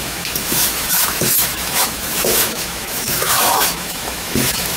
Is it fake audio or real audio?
fake